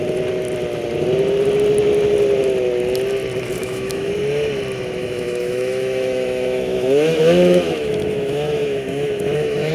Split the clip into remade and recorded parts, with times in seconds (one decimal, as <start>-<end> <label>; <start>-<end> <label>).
0.0-3.6 recorded; 3.6-4.1 remade; 4.1-5.0 recorded; 5.0-9.7 remade